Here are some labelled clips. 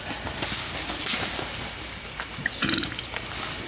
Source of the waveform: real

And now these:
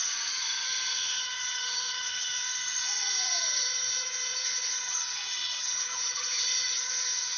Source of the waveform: fake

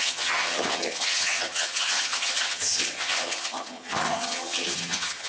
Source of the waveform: fake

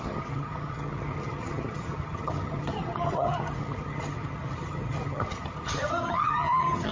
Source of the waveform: fake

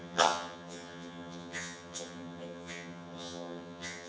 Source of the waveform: fake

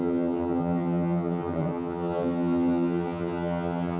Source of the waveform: fake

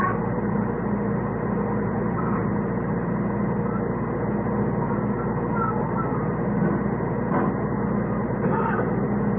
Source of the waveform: real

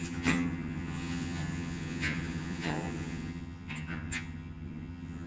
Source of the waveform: fake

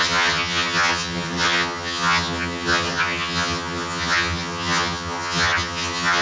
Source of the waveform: fake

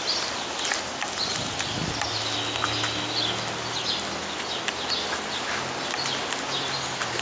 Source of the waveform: real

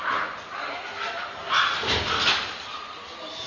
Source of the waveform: real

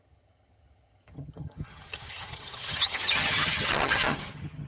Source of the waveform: fake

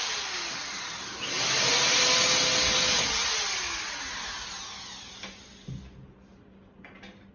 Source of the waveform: real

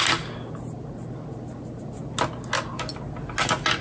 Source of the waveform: real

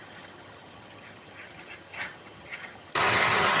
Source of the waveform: fake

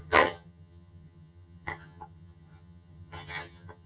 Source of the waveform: fake